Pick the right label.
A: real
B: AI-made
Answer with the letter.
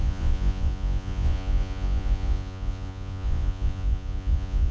B